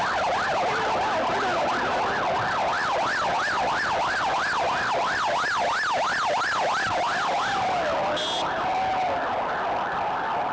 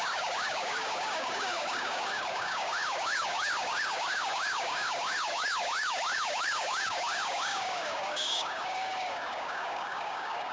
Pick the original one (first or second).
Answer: first